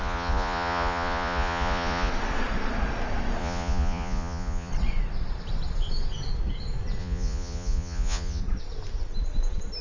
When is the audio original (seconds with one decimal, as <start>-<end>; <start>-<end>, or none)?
2.1-3.4; 4.7-7.0; 8.4-9.8